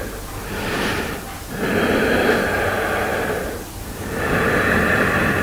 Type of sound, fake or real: real